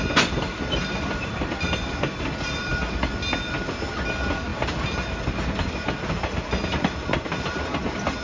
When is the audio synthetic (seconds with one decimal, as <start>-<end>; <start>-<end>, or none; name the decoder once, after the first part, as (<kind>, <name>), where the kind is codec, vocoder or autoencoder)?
none